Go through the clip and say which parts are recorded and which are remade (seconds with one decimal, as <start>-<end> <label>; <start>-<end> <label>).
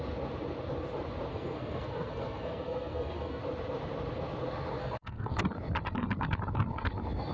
0.0-1.3 recorded; 1.3-3.4 remade; 3.4-4.8 recorded; 4.8-5.4 remade; 5.4-7.3 recorded